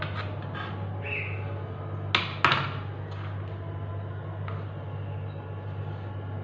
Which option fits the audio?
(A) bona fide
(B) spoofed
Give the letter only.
A